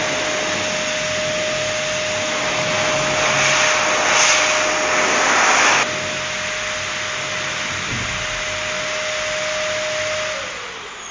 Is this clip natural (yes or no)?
yes